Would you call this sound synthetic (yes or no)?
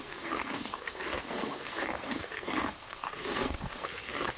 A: yes